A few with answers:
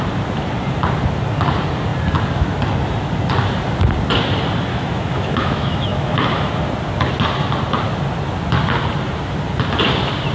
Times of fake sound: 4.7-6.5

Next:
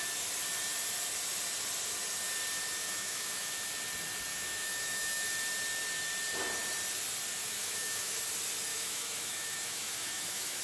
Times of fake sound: 2.8-3.7; 4.3-5.2; 7.4-8.2; 8.7-10.6